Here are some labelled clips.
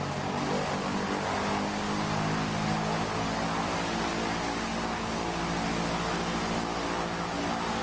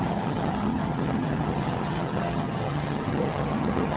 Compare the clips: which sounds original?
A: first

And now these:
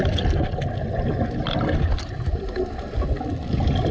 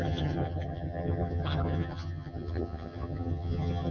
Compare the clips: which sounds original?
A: first